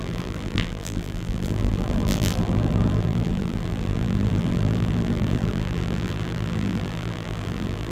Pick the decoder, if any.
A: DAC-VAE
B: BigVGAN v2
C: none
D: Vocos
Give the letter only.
B